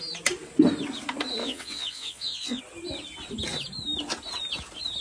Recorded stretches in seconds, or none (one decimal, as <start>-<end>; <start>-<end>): 0.0-1.4; 2.6-5.0